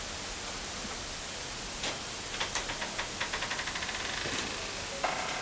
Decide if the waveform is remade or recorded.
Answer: recorded